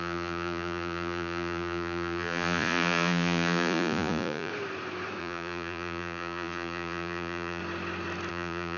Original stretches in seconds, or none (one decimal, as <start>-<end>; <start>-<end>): 4.5-5.2; 7.6-8.3